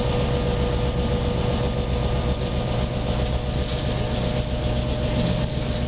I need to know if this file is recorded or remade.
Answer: recorded